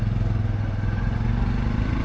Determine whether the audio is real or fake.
real